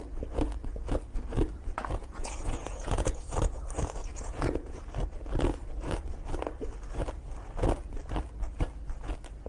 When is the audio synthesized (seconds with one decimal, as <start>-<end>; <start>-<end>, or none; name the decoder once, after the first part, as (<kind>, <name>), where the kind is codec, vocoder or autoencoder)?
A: 2.0-3.4 (vocoder, Vocos); 4.0-4.8